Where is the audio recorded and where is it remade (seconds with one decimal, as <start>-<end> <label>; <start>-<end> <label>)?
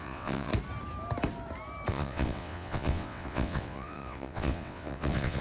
0.0-0.5 remade; 0.5-1.9 recorded; 1.9-5.4 remade